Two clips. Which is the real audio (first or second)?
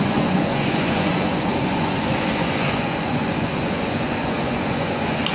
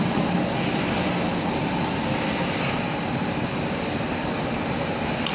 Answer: second